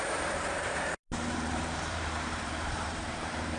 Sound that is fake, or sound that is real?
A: fake